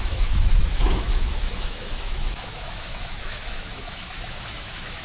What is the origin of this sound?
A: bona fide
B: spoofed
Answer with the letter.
B